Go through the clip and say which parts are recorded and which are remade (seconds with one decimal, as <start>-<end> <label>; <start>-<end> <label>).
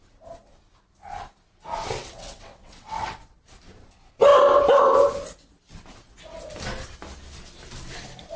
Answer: 0.0-2.0 recorded; 2.0-3.2 remade; 3.2-8.4 recorded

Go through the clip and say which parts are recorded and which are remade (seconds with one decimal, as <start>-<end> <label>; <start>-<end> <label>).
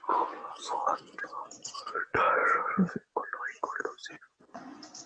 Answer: 0.0-5.1 remade